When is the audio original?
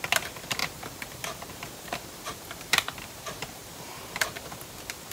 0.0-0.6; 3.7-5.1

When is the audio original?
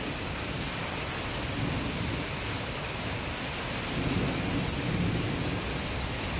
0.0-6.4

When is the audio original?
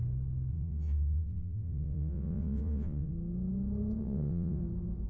0.0-0.5; 3.1-4.0; 4.6-5.1